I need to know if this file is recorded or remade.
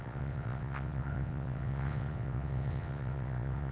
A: remade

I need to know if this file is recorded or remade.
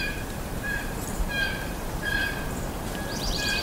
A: remade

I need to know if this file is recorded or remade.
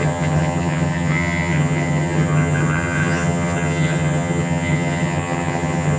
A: remade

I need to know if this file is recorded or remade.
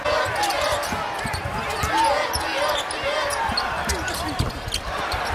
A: recorded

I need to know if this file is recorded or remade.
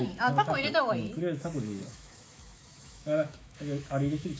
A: remade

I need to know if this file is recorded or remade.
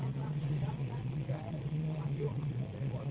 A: remade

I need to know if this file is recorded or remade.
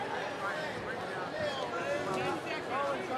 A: recorded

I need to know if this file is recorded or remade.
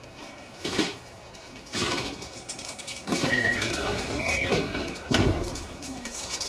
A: remade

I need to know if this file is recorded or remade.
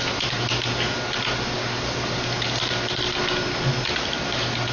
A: recorded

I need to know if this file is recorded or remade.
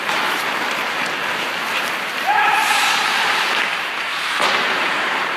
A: remade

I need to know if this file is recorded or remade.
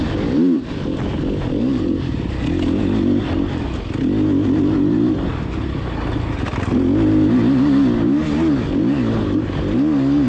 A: recorded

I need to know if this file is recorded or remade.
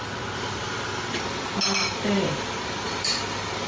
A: recorded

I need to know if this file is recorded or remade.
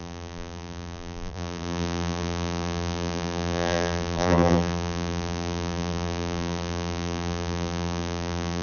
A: remade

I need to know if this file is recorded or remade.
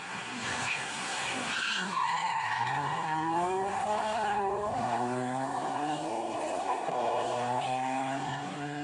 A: remade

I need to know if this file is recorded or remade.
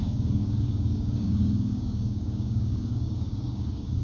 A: remade